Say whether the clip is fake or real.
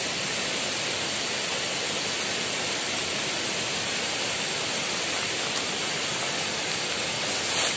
real